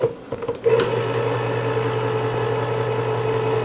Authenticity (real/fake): real